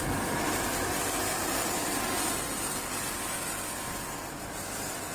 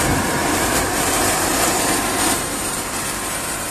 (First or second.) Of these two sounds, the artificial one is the second